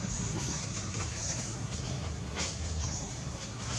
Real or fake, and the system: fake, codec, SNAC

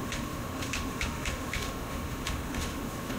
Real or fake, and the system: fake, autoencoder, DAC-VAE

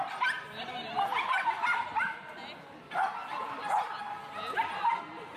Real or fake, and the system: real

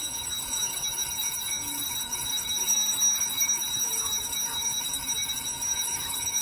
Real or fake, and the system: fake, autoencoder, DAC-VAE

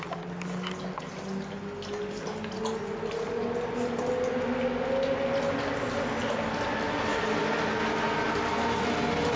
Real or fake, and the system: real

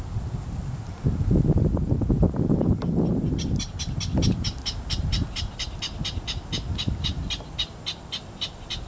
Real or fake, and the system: real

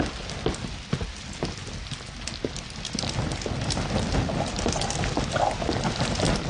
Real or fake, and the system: real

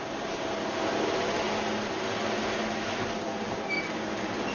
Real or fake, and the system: real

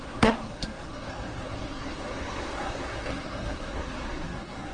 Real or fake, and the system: fake, codec, SNAC